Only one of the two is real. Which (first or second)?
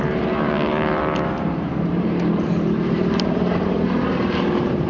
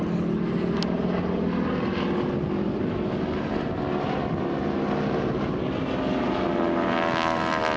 second